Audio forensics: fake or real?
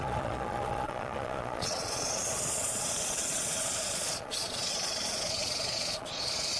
fake